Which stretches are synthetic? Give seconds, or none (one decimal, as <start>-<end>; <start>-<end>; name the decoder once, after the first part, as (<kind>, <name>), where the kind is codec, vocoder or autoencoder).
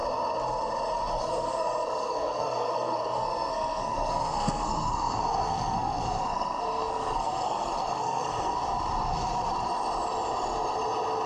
1.2-8.6 (codec, SNAC)